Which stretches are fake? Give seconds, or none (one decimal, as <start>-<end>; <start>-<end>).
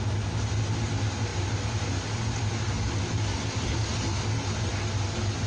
none